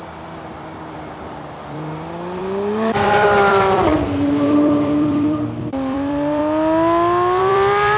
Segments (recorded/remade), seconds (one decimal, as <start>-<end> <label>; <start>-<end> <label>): 0.0-2.4 remade; 2.4-2.9 recorded; 2.9-3.9 remade; 3.9-4.4 recorded; 4.4-6.4 remade; 6.4-7.4 recorded; 7.4-8.0 remade

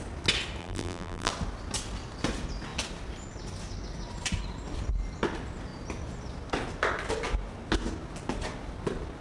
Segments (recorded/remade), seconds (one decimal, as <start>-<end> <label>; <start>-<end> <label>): 0.0-0.6 recorded; 0.6-1.3 remade; 1.3-9.2 recorded

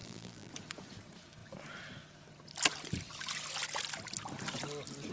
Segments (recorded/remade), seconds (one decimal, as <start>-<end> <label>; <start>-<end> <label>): 0.0-0.5 remade; 0.5-5.1 recorded

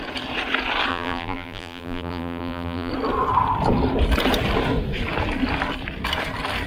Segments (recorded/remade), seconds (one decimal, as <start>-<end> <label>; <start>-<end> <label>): 0.0-0.9 recorded; 0.9-2.9 remade; 2.9-6.7 recorded